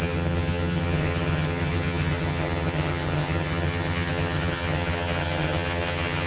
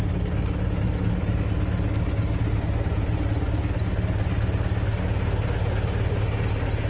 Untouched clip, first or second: second